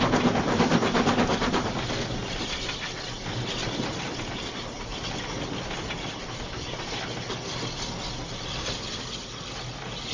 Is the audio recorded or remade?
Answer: recorded